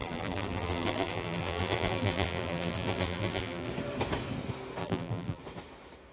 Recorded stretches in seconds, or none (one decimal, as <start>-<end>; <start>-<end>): 3.7-4.8; 5.4-6.1